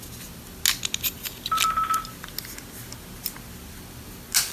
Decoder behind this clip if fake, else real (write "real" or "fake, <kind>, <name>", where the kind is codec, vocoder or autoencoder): real